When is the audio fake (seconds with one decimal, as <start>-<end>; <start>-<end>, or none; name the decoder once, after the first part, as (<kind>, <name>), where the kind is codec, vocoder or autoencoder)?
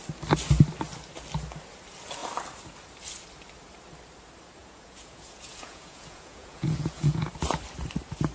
4.6-7.3 (vocoder, Vocos)